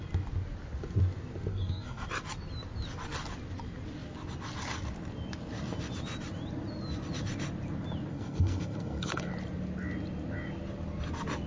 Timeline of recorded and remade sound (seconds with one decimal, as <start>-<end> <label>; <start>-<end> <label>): 0.0-1.5 recorded; 1.5-2.1 remade; 2.1-8.1 recorded; 8.1-9.3 remade; 9.3-11.5 recorded